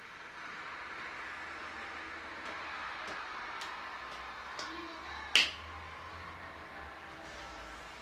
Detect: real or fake real